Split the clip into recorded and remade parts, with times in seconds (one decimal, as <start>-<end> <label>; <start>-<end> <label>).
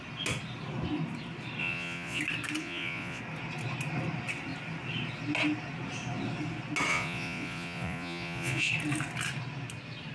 0.0-1.6 recorded; 1.6-2.2 remade; 2.2-2.6 recorded; 2.6-3.2 remade; 3.2-6.9 recorded; 6.9-8.7 remade; 8.7-10.1 recorded